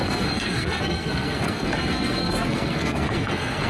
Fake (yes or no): yes